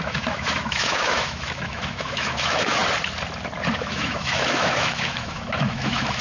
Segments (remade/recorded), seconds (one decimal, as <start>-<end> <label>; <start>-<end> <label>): 0.0-2.8 remade; 2.8-3.7 recorded; 3.7-6.2 remade